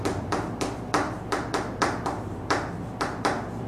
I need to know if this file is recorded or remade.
remade